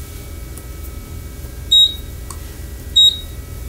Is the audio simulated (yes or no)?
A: no